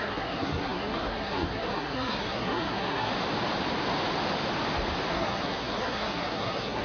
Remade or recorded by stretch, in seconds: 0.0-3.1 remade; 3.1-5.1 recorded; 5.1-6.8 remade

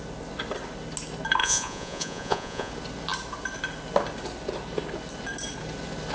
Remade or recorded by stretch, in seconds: 0.0-1.4 recorded; 1.4-2.7 remade; 2.7-6.1 recorded

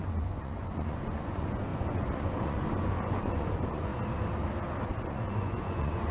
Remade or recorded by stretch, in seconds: 0.0-3.9 remade; 3.9-5.0 recorded; 5.0-6.1 remade

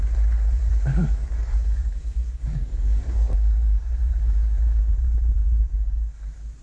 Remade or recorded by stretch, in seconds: 0.0-0.9 recorded; 0.9-4.9 remade; 4.9-5.4 recorded; 5.4-6.1 remade; 6.1-6.6 recorded

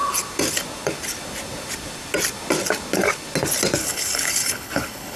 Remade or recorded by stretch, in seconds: 0.0-3.8 recorded; 3.8-5.2 remade

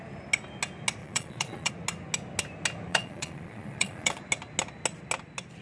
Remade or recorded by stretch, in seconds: 0.0-1.0 recorded; 1.0-1.7 remade; 1.7-2.9 recorded; 2.9-4.2 remade; 4.2-5.6 recorded

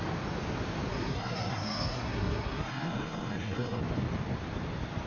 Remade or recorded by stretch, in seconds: 0.0-0.9 recorded; 0.9-3.8 remade; 3.8-5.1 recorded

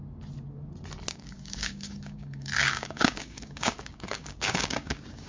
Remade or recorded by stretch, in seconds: 0.0-1.1 recorded; 1.1-5.3 remade